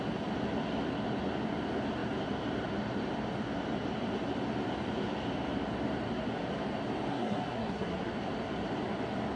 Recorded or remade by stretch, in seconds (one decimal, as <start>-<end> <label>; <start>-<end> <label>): 0.0-7.1 recorded; 7.1-8.1 remade; 8.1-9.4 recorded